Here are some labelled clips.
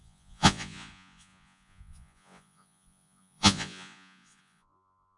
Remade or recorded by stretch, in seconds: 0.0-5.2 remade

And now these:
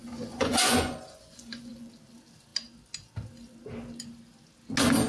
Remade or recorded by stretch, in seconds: 0.0-1.9 remade; 1.9-5.1 recorded